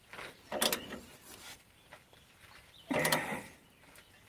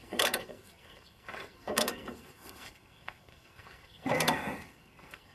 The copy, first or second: second